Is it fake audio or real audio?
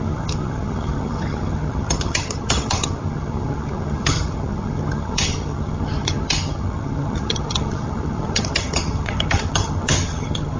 fake